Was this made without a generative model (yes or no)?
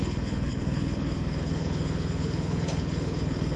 no